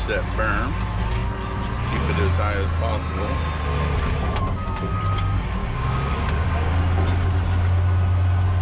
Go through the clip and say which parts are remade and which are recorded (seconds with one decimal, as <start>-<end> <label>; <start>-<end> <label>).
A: 0.0-5.6 recorded; 5.6-6.8 remade; 6.8-8.6 recorded